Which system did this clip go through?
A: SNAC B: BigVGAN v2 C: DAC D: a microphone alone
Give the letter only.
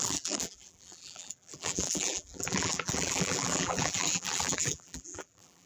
B